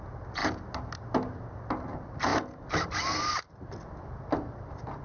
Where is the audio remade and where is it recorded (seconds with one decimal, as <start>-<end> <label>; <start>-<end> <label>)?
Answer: 0.0-5.0 recorded